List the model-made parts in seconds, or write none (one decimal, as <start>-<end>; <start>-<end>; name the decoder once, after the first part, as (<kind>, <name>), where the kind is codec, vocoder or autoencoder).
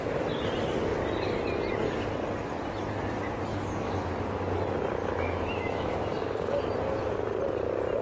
3.5-4.1 (autoencoder, DAC-VAE); 5.0-6.6